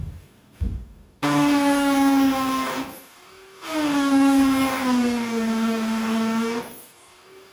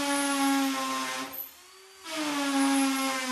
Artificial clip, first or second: first